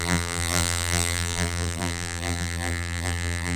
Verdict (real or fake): fake